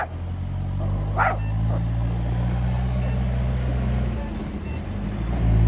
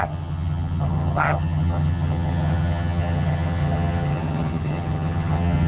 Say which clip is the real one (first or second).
first